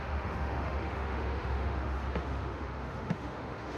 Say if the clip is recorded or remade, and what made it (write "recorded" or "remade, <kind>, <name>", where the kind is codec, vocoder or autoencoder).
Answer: remade, autoencoder, DAC-VAE